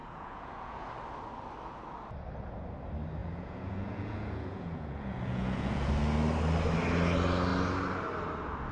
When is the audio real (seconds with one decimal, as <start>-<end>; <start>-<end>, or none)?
0.9-3.2; 5.9-8.7

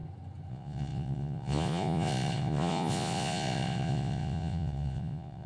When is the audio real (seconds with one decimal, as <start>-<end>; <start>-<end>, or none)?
0.0-0.5

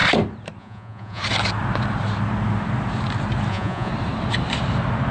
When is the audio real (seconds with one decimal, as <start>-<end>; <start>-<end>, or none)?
0.0-0.6; 1.2-3.5; 3.9-5.1

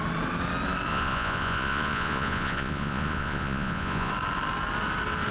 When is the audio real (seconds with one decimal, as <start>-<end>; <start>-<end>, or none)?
0.0-0.9; 4.1-5.3

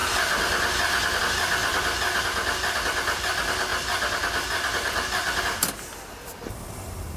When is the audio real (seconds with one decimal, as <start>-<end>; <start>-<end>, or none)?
0.0-7.2

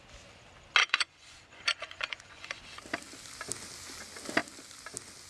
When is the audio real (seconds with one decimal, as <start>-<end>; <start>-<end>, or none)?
0.0-0.8; 2.6-5.3